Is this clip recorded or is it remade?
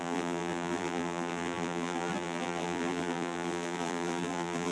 remade